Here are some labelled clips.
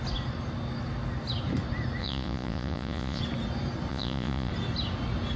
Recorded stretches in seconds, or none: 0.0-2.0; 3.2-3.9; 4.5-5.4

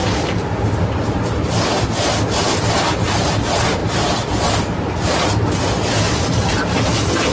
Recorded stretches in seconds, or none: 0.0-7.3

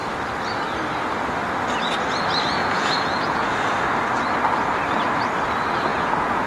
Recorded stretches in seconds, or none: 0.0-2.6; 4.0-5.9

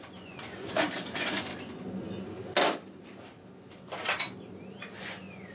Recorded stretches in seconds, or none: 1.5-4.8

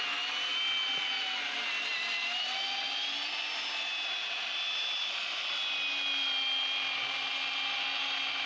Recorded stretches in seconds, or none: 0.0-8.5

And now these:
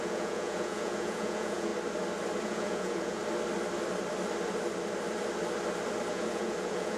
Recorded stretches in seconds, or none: 1.7-2.4; 3.2-6.1

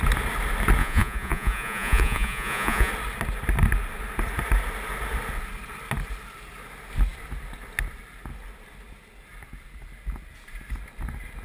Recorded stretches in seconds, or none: 0.0-0.8; 2.9-11.4

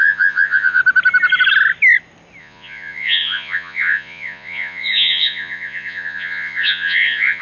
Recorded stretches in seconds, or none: 0.8-2.4